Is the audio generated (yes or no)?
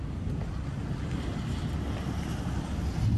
no